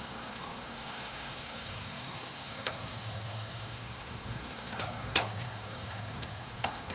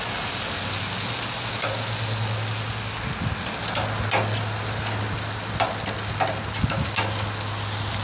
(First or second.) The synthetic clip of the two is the first